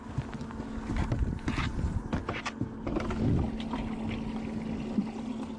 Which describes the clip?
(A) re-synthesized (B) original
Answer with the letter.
B